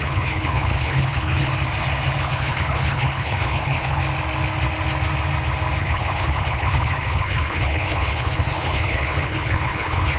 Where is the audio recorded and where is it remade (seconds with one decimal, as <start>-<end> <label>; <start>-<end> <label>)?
0.0-1.5 remade; 1.5-2.2 recorded; 2.2-4.0 remade; 4.0-5.8 recorded; 5.8-10.2 remade